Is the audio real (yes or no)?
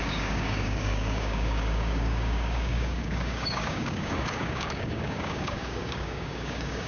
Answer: no